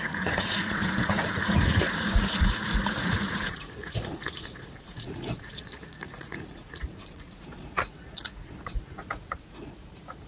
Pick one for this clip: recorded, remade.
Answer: remade